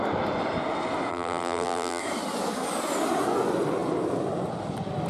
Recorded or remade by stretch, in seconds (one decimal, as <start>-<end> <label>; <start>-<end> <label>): 0.0-1.1 recorded; 1.1-2.0 remade; 2.0-5.1 recorded